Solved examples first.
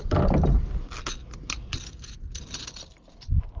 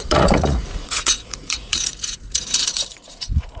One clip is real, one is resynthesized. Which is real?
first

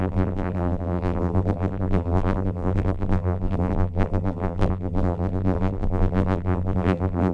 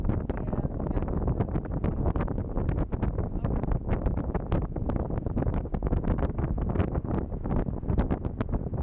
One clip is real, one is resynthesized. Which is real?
second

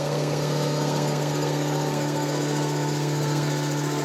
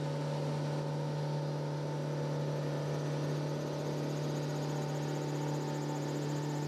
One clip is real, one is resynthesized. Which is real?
second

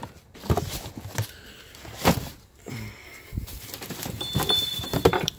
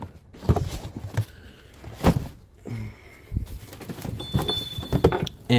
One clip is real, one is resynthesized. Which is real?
second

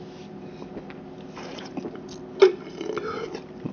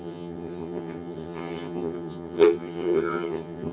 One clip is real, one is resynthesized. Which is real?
first